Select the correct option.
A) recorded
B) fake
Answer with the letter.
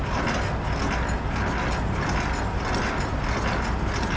A